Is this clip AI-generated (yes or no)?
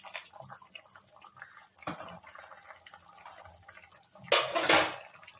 no